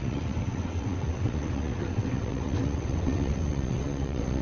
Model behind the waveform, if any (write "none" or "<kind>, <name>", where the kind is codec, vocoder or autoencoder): vocoder, WaveNeXt